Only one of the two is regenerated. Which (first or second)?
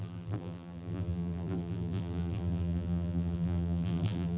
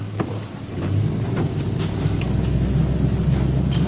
first